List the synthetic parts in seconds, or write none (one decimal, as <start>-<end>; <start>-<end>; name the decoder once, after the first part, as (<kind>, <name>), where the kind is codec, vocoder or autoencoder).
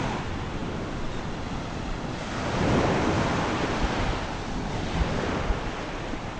none